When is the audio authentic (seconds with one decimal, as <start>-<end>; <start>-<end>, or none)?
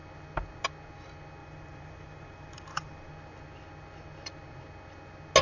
0.0-1.4; 3.1-5.4